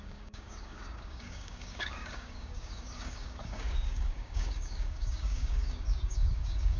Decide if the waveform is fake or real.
fake